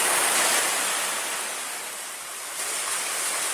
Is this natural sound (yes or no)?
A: yes